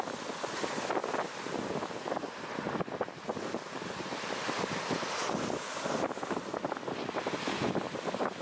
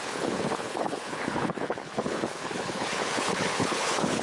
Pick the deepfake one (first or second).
second